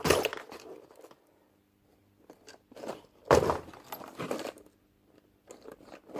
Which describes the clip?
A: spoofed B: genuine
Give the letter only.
B